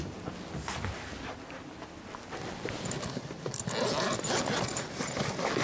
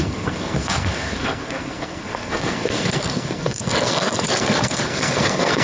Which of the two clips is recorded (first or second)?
first